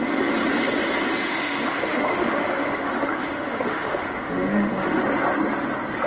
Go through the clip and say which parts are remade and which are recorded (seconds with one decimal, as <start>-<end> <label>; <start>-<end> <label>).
0.0-1.3 recorded; 1.3-5.0 remade; 5.0-6.1 recorded